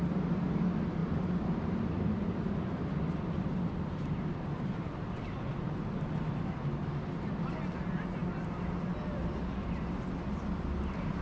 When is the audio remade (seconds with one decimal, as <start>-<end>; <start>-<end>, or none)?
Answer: none

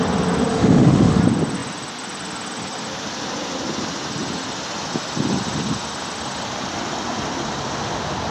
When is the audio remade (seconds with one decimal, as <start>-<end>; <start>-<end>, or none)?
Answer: 0.5-1.2